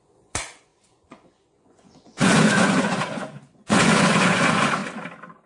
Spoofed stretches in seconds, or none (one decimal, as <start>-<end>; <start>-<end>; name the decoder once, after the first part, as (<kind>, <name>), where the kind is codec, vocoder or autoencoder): 0.0-4.8 (vocoder, Vocos)